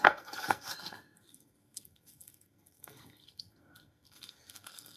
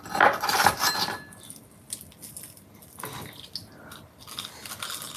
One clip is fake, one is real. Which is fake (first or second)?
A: first